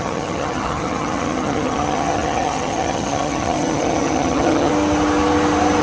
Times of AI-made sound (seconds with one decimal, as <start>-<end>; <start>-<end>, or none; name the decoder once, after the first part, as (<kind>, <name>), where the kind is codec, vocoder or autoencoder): 0.0-4.7 (vocoder, HiFi-GAN)